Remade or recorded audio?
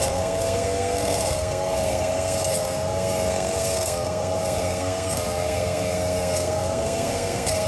remade